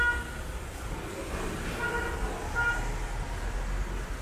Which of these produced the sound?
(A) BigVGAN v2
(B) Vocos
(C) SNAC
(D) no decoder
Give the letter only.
D